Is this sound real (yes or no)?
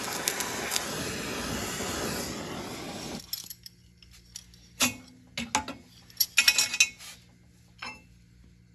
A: yes